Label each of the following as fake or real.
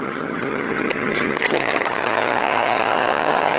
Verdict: fake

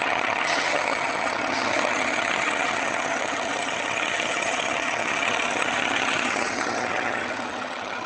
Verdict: fake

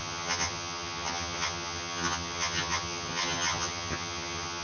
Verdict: fake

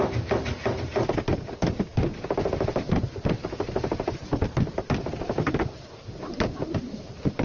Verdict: real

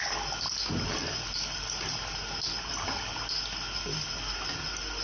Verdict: real